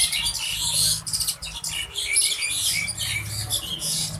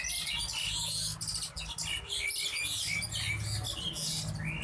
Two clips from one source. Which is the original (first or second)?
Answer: second